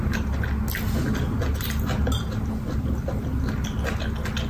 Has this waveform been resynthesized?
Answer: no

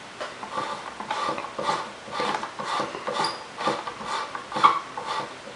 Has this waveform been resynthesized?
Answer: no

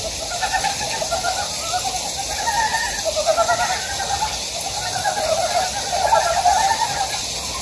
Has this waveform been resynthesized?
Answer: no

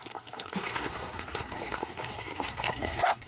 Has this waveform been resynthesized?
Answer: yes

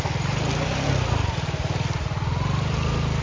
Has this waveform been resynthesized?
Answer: no